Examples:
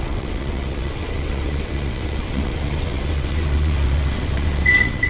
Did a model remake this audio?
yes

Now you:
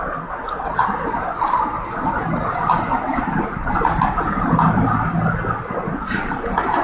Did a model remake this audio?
no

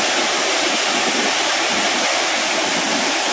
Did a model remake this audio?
no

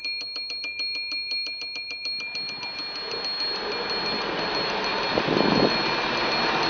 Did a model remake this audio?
no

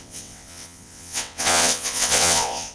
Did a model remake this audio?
yes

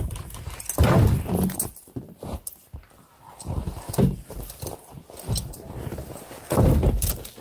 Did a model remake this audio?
no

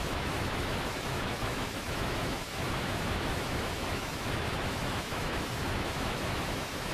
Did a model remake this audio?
yes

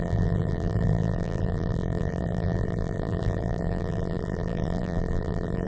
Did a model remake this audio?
yes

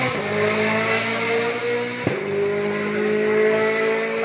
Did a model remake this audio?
no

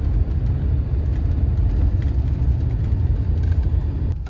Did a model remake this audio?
yes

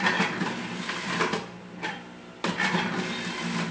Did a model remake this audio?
no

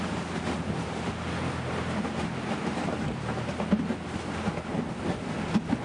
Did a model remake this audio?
no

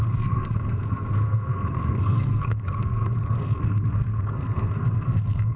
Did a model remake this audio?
yes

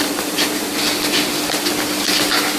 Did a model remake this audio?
no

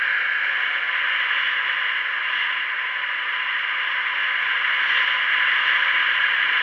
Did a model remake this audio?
no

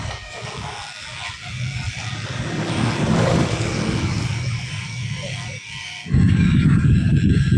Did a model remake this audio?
yes